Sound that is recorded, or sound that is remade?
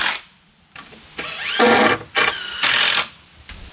recorded